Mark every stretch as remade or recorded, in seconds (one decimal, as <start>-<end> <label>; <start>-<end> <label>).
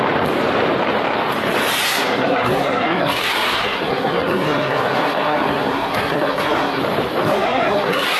0.0-1.9 recorded; 1.9-6.8 remade; 6.8-7.2 recorded; 7.2-8.2 remade